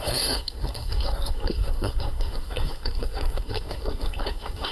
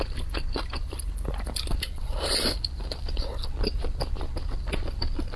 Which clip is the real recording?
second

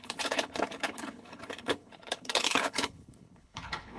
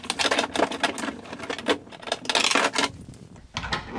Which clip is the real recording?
second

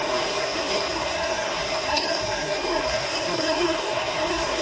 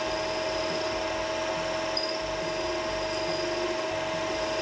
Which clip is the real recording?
second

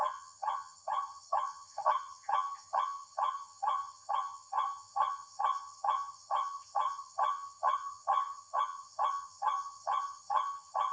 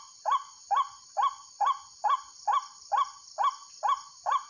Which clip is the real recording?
second